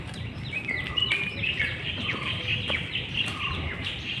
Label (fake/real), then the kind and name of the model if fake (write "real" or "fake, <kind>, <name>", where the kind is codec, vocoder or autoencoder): real